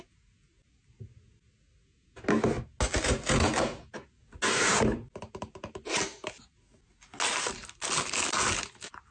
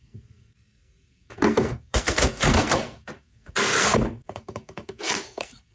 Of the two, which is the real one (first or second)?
first